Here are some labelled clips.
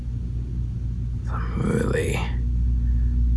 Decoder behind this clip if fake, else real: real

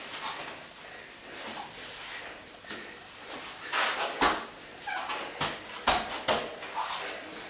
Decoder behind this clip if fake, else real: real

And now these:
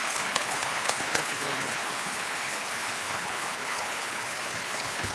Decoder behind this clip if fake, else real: fake, codec, HILCodec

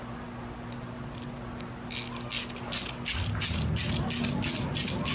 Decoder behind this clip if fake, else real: real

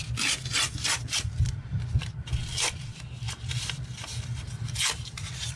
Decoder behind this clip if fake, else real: real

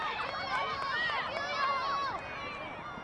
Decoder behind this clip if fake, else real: real